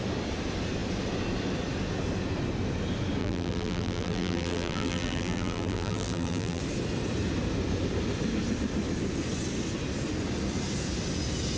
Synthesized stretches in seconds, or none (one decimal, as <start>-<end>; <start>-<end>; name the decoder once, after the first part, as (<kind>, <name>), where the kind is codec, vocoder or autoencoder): 3.2-6.6 (vocoder, BigVGAN v2)